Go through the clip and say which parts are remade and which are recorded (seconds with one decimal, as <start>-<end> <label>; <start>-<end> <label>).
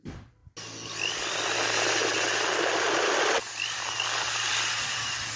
0.0-0.4 remade; 0.4-2.9 recorded; 2.9-3.4 remade; 3.4-4.5 recorded; 4.5-5.4 remade